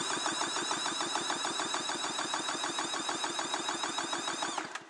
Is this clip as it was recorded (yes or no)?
yes